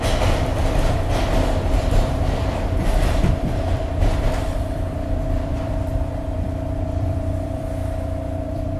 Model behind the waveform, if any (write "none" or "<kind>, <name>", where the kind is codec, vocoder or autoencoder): vocoder, BigVGAN v2